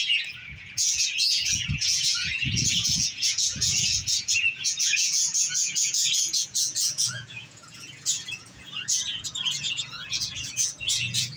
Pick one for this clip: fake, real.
fake